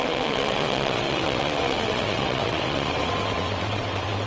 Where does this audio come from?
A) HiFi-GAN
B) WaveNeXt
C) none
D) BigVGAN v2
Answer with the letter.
B